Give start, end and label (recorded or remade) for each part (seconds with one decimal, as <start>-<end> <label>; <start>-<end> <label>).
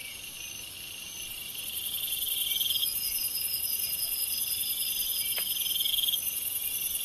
0.0-7.0 recorded